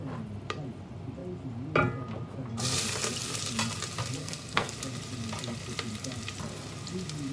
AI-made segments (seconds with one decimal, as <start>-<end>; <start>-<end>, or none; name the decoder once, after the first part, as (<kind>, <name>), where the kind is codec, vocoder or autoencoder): 4.2-4.7 (codec, SNAC)